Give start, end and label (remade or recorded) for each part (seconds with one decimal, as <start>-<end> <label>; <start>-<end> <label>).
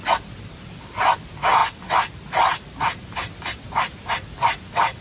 0.0-5.0 recorded